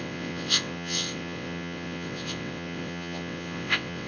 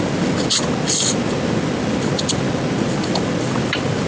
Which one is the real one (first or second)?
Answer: second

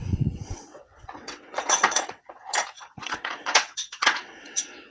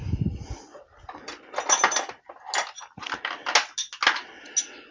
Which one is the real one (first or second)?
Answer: second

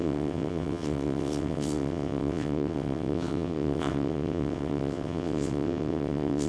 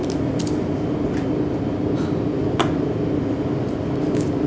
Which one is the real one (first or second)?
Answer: second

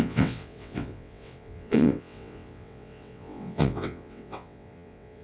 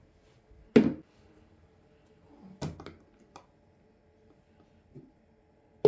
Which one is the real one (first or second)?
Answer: second